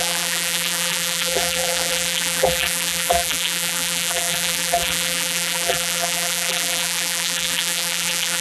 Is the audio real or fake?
fake